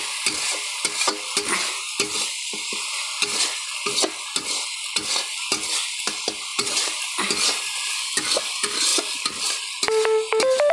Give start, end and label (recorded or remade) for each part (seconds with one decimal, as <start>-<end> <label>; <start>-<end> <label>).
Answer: 0.0-6.5 recorded; 6.5-7.0 remade; 7.0-8.9 recorded; 8.9-9.6 remade; 9.6-10.7 recorded